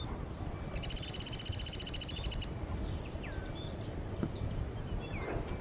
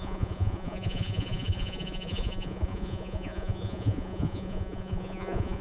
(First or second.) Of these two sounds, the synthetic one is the second